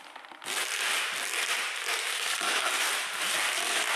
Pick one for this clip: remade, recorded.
recorded